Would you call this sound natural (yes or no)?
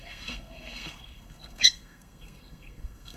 no